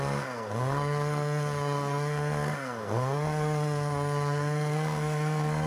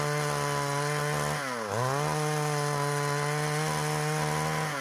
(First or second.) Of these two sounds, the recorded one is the second